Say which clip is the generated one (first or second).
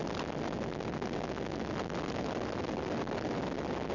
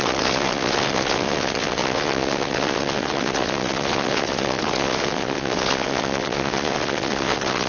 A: second